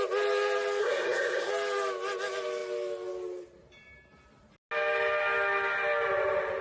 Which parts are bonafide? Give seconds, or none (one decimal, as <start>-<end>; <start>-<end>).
0.0-0.8; 1.5-6.6